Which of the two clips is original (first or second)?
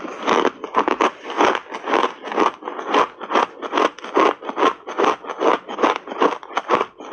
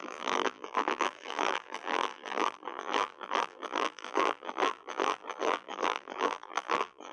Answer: first